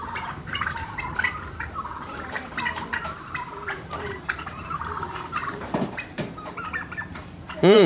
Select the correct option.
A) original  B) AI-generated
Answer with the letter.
B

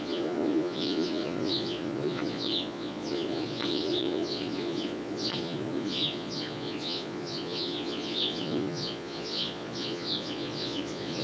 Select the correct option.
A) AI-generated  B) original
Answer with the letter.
A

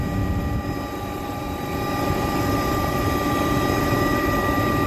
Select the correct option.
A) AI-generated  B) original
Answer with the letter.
A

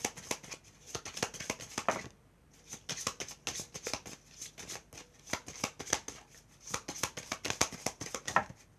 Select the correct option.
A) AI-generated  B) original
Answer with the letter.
B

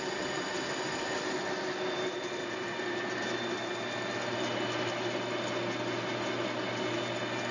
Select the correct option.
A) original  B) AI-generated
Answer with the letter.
A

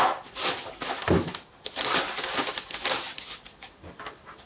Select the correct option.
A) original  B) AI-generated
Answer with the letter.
A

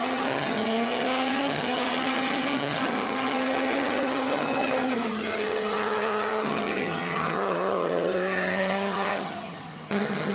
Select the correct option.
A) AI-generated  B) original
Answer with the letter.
A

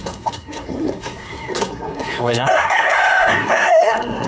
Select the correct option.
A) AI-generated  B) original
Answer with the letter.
A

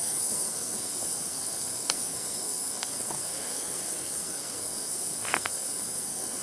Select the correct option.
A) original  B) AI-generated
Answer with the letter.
B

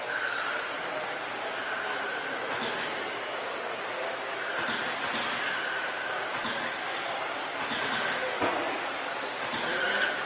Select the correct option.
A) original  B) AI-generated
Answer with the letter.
A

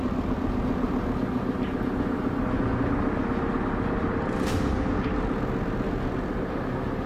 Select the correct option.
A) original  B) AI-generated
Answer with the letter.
A